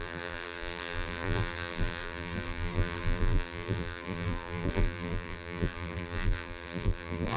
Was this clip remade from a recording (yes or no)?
yes